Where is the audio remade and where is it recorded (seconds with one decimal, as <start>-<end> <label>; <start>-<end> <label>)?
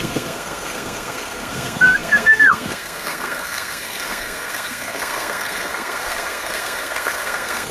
0.0-7.7 remade